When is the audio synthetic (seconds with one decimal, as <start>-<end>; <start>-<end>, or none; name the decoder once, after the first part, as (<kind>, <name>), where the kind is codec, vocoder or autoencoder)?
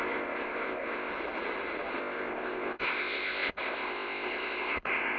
0.0-1.1 (codec, ZipCodec); 2.0-5.2